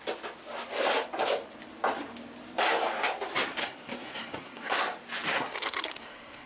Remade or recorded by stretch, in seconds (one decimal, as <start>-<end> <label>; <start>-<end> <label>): 0.0-3.6 recorded; 3.6-4.8 remade; 4.8-5.3 recorded; 5.3-6.5 remade